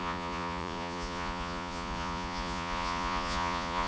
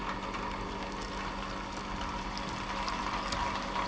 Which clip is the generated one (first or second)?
first